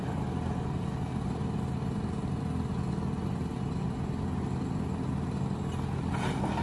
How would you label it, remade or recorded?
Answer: recorded